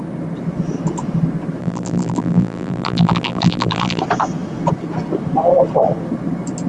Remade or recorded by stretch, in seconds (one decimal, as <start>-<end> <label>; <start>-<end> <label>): 0.0-1.6 recorded; 1.6-4.0 remade; 4.0-6.7 recorded